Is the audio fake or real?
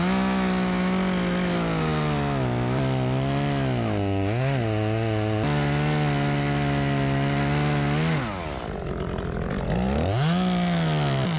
real